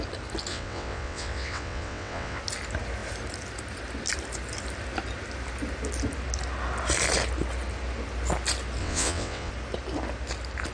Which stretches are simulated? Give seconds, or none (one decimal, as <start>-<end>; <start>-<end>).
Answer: 0.5-2.4; 8.8-9.5